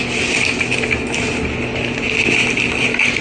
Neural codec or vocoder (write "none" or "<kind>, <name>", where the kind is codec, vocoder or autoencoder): none